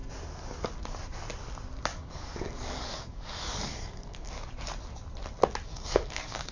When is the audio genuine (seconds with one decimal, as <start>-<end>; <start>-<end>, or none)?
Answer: 0.0-1.9; 4.3-5.7